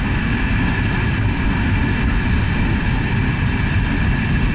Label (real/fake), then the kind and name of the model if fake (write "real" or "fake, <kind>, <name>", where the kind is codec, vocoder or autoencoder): real